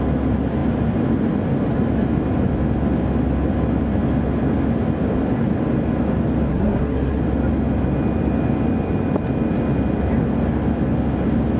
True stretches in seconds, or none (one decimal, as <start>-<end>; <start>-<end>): 0.0-6.5; 7.2-11.6